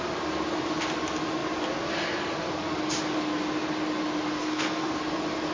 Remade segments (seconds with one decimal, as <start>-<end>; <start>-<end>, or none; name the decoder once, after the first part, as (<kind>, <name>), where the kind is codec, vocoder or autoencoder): 4.4-5.0 (codec, SNAC)